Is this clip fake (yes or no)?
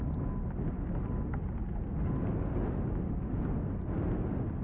no